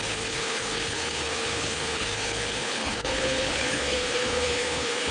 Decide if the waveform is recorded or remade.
remade